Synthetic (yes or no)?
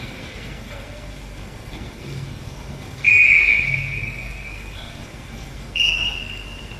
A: yes